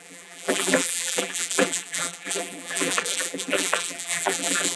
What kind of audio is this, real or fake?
fake